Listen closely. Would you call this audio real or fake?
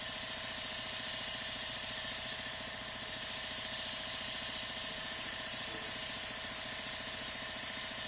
fake